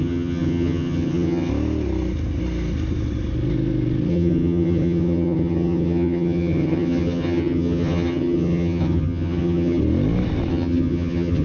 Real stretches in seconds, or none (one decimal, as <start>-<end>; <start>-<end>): 1.5-4.1; 9.8-10.5